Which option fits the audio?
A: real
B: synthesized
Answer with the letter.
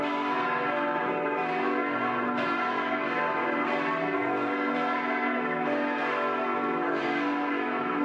B